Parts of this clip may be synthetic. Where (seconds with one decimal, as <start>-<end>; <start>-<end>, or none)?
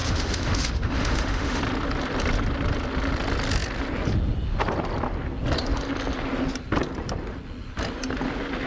0.0-1.6